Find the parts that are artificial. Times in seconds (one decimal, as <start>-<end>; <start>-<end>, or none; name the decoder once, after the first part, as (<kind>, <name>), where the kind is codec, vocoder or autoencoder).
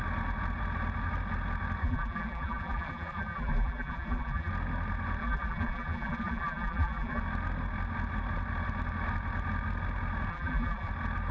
1.8-4.5 (vocoder, BigVGAN v2); 5.2-7.2; 10.3-10.9